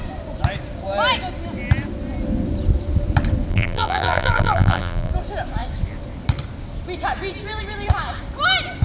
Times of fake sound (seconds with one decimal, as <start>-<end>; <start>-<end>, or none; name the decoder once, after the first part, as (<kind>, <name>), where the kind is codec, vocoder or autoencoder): 3.5-5.1 (vocoder, BigVGAN v2)